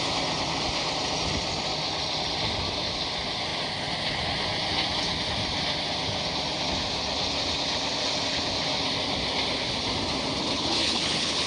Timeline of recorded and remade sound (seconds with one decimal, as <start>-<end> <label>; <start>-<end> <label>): 0.0-10.4 recorded; 10.4-11.5 remade